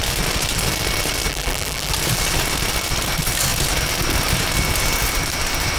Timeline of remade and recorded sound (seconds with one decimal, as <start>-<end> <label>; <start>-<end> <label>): 0.0-1.3 recorded; 1.3-1.9 remade; 1.9-5.8 recorded